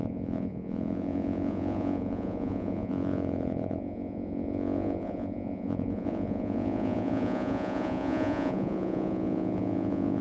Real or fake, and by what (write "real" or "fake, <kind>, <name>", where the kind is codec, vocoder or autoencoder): fake, vocoder, Vocos